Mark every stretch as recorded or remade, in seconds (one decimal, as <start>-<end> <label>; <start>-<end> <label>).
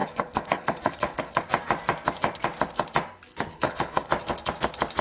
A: 0.0-1.4 remade; 1.4-3.5 recorded; 3.5-4.1 remade; 4.1-5.0 recorded